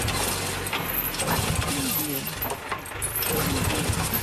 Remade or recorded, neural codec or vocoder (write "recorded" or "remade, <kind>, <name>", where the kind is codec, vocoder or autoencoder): recorded